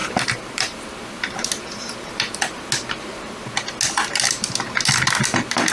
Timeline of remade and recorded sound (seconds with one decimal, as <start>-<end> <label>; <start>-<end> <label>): 0.0-0.9 remade; 0.9-5.7 recorded